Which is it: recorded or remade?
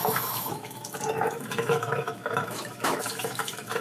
remade